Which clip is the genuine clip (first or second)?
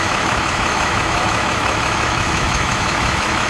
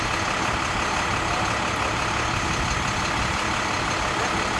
second